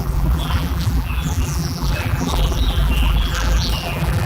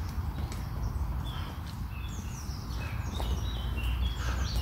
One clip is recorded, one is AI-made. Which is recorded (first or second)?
second